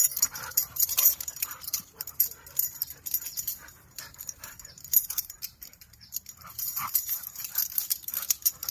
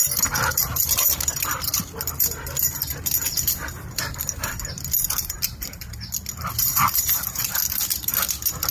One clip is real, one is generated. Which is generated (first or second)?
first